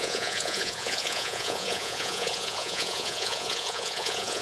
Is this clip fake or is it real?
fake